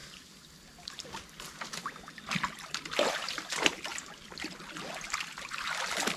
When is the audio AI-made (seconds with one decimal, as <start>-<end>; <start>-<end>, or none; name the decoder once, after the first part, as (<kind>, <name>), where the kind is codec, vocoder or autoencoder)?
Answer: none